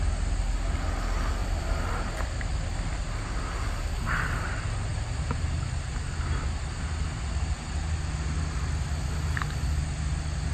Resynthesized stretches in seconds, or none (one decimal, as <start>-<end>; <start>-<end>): 1.4-1.9